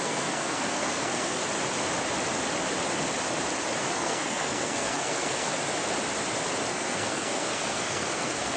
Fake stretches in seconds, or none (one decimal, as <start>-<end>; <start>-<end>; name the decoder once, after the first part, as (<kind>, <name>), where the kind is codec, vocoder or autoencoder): 0.0-1.4 (codec, SNAC); 3.8-5.6; 6.7-8.6